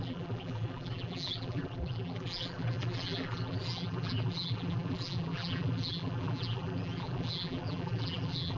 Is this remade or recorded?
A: remade